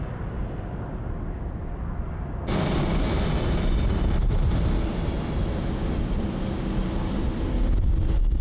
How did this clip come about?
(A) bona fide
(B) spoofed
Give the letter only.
A